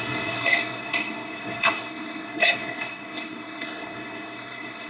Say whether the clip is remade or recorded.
remade